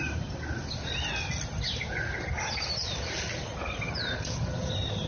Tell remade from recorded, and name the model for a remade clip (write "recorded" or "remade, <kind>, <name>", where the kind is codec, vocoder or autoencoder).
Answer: recorded